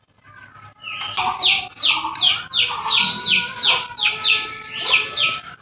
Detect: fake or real real